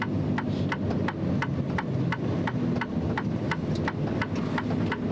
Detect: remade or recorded recorded